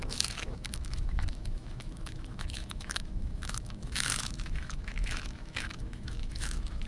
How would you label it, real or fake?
fake